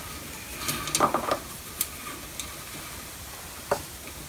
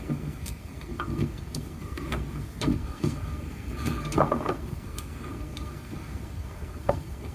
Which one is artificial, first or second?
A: second